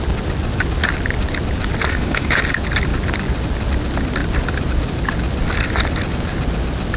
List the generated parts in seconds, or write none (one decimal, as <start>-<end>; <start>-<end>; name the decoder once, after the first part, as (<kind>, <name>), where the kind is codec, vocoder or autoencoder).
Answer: 1.9-2.4 (autoencoder, DAC-VAE)